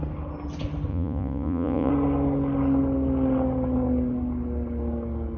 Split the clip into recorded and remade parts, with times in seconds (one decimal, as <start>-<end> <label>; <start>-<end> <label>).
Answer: 0.0-0.9 recorded; 0.9-1.9 remade; 1.9-5.4 recorded